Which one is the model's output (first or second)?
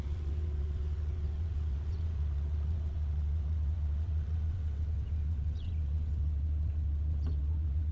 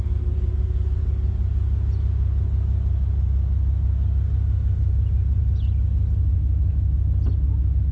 first